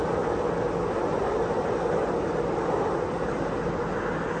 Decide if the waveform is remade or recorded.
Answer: recorded